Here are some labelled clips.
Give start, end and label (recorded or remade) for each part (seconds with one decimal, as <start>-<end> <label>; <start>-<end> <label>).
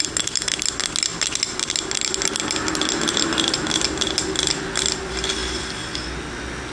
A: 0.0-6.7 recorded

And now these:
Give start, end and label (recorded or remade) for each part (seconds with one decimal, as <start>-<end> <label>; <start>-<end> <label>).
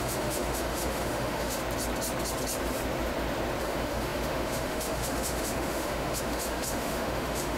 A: 0.0-1.6 remade; 1.6-3.6 recorded; 3.6-7.6 remade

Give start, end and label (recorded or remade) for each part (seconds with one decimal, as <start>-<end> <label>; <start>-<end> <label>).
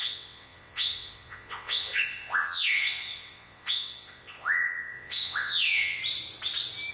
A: 0.0-6.0 remade; 6.0-6.9 recorded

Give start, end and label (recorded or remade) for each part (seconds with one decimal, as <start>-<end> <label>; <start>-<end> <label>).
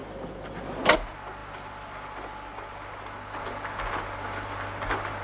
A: 0.0-5.2 recorded